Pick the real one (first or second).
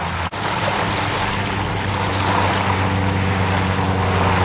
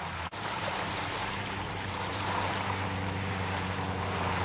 first